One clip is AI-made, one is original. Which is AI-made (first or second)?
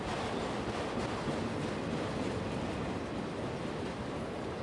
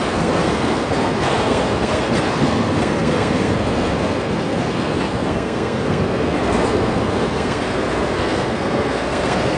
second